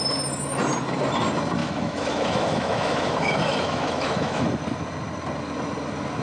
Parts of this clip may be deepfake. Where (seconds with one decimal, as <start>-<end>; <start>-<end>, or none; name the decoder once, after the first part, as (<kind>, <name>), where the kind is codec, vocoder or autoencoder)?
1.6-4.4 (autoencoder, DAC-VAE)